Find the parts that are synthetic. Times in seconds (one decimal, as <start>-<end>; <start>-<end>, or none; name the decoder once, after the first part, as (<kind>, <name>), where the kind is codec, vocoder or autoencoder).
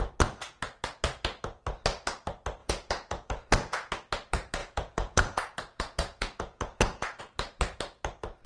2.6-3.9 (vocoder, Vocos); 4.6-7.2